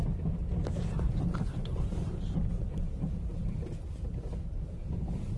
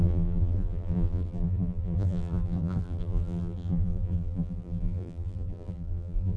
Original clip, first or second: first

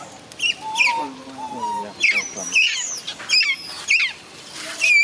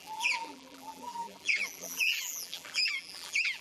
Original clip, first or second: first